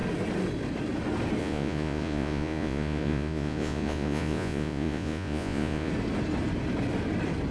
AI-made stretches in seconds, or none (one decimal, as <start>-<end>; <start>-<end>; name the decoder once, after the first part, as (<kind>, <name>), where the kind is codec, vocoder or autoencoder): 1.4-5.9 (vocoder, Vocos)